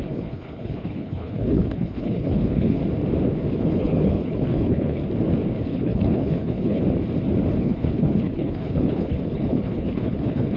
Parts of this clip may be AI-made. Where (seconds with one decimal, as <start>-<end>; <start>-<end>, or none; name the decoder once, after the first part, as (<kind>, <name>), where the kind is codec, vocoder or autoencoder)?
0.0-2.8 (codec, HILCodec); 3.6-5.0; 5.7-6.8; 7.6-10.6